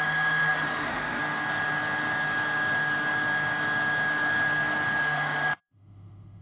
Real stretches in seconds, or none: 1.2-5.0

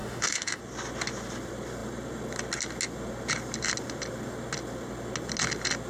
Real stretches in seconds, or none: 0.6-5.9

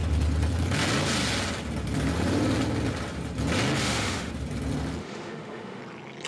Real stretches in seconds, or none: 0.0-3.8; 4.3-5.0; 5.8-6.3

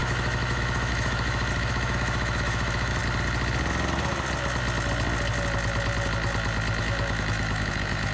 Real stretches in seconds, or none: 3.0-6.8

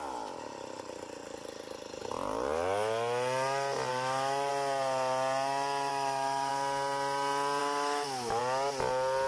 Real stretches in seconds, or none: 0.0-3.9; 4.5-5.9; 6.5-7.6; 8.4-9.3

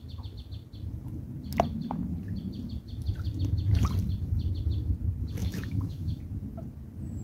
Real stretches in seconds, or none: 0.0-5.4; 6.2-7.2

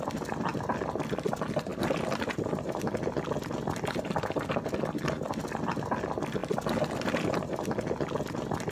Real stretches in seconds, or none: 0.0-8.7